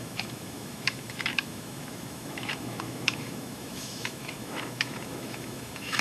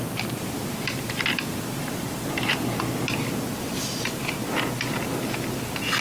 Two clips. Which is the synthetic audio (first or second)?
first